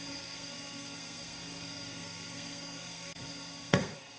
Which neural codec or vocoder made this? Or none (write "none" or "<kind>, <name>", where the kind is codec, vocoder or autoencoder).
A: codec, SNAC